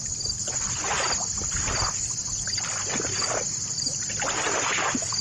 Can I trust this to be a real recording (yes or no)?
yes